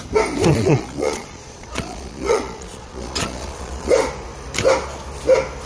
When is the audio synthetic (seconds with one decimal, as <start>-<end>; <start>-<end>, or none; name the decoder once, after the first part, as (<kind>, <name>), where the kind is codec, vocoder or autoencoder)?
0.5-3.9 (vocoder, Vocos)